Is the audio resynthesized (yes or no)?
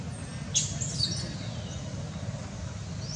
no